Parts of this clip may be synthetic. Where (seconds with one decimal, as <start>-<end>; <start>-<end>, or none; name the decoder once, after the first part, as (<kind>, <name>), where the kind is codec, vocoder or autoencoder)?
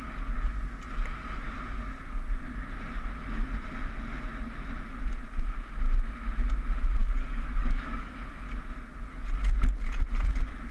7.0-8.1 (codec, DAC)